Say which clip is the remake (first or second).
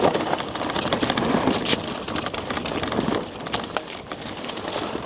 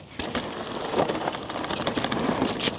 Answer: first